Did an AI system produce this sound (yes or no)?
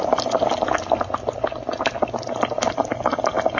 no